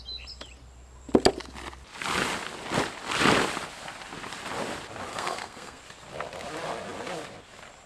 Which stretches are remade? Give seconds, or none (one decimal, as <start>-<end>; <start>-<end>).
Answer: 5.1-5.8